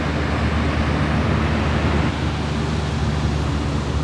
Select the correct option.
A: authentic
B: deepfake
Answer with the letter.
A